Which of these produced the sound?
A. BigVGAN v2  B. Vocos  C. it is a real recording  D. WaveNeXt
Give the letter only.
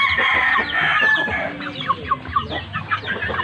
C